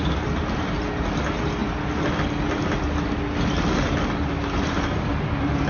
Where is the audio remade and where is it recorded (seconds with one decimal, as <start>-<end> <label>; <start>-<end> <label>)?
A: 0.0-5.7 recorded